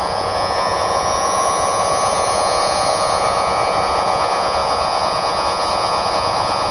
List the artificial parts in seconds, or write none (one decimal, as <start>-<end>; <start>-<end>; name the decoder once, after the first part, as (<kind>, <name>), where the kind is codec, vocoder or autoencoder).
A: 0.0-6.7 (vocoder, Vocos)